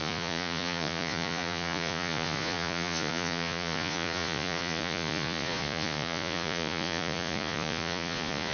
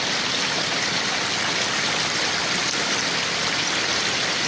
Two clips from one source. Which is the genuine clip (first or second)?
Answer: second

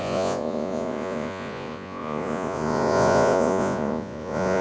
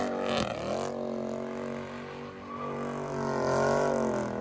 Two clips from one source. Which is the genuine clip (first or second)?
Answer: second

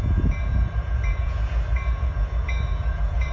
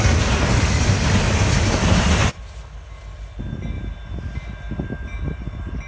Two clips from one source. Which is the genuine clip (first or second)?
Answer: second